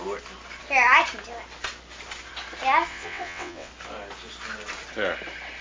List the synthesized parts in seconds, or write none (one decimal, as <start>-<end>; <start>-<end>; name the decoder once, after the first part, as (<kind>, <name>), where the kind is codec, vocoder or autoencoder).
2.9-3.7 (vocoder, WaveNeXt)